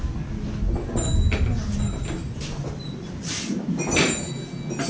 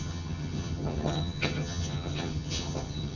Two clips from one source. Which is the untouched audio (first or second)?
first